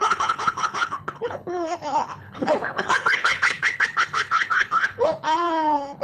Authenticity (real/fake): fake